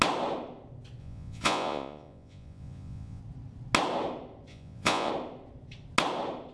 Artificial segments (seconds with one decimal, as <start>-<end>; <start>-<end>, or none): 1.0-3.2; 4.5-5.1